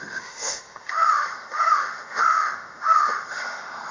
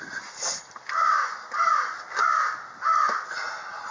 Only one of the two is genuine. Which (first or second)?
second